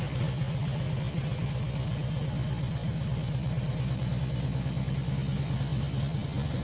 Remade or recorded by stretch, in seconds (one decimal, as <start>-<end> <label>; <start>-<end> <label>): 0.0-2.8 recorded; 2.8-4.1 remade; 4.1-6.6 recorded